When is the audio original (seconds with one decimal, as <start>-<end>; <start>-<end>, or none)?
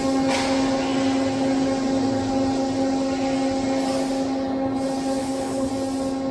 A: 0.0-5.2; 5.7-6.3